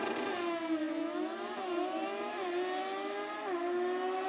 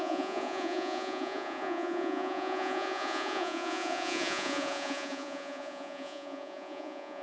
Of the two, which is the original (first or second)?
first